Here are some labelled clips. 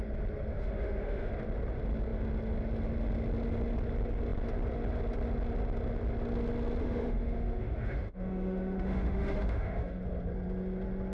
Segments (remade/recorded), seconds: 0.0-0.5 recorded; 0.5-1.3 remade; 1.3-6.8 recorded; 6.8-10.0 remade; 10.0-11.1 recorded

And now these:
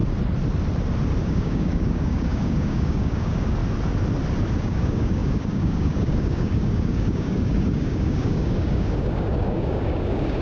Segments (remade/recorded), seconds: 0.0-1.2 recorded; 1.2-3.6 remade; 3.6-4.6 recorded; 4.6-10.4 remade

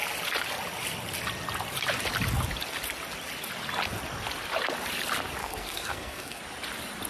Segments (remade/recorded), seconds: 0.0-5.4 recorded; 5.4-6.4 remade; 6.4-7.1 recorded

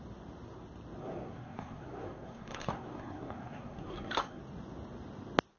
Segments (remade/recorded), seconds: 0.0-1.0 recorded; 1.0-4.4 remade; 4.4-5.6 recorded

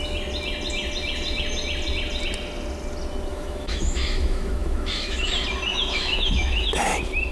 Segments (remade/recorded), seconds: 0.0-3.3 recorded; 3.3-5.3 remade; 5.3-5.7 recorded; 5.7-6.7 remade; 6.7-7.3 recorded

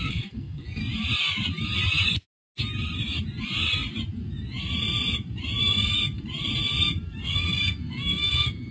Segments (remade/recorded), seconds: 0.0-0.8 remade; 0.8-5.6 recorded; 5.6-6.0 remade; 6.0-7.2 recorded; 7.2-8.7 remade

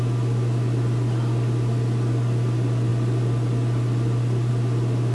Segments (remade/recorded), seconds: 0.0-5.1 recorded

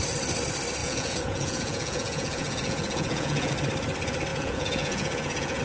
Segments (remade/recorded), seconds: 0.0-0.8 recorded; 0.8-3.5 remade; 3.5-4.3 recorded; 4.3-5.6 remade